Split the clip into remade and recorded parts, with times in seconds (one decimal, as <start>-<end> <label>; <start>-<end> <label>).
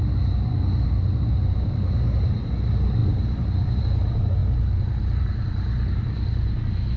0.0-3.0 recorded; 3.0-3.8 remade; 3.8-7.0 recorded